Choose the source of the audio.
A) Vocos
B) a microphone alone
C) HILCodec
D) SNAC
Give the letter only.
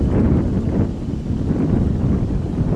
B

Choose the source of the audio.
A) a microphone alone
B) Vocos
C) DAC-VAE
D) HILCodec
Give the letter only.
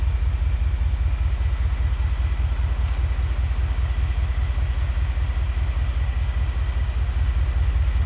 A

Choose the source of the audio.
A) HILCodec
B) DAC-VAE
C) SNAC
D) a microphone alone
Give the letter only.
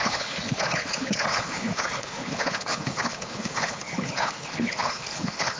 A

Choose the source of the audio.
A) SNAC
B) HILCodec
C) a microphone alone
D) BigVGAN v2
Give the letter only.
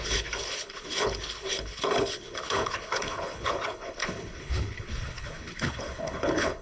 B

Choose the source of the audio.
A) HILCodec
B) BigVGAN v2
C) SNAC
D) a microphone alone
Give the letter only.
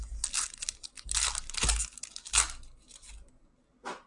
D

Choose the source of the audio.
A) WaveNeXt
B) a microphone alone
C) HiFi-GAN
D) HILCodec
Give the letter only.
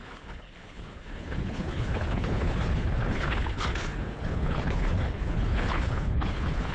D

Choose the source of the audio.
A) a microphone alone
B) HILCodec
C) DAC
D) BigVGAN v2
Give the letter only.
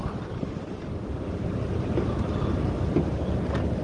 A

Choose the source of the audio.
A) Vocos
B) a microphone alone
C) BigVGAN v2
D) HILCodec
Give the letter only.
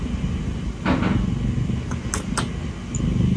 B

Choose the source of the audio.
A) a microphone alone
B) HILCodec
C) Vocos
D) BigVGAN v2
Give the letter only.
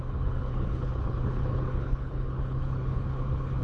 B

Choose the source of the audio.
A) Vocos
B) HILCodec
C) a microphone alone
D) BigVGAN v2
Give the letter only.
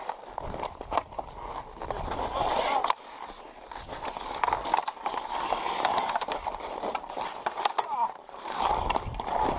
C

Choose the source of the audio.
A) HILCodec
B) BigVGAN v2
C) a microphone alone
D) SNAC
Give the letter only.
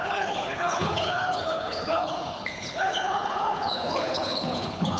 A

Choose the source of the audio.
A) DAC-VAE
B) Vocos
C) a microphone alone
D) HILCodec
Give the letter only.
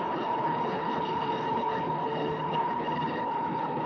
D